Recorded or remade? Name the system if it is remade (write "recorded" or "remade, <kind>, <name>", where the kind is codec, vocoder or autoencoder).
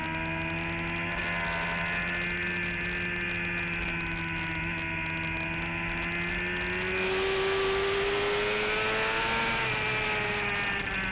recorded